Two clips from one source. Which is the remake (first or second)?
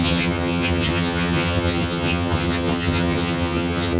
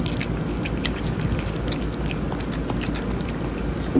first